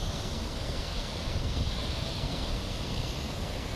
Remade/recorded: remade